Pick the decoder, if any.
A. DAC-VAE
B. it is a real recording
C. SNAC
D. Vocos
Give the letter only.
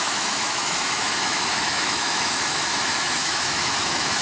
A